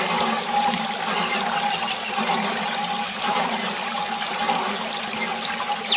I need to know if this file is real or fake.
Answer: real